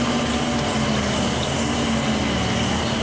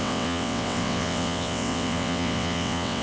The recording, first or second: first